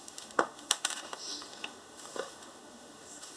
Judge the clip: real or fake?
fake